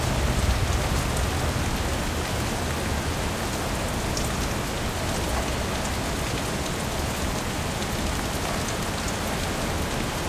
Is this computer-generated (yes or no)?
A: no